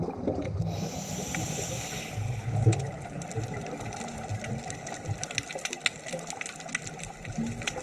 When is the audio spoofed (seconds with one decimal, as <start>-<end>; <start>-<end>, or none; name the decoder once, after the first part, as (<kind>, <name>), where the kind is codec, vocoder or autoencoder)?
none